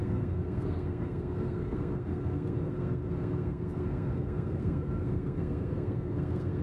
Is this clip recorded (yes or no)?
no